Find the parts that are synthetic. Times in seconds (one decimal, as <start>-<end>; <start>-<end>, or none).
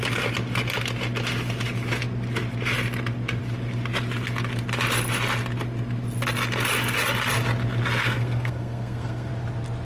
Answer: 8.0-9.3